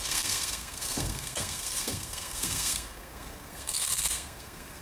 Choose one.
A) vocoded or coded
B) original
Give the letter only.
A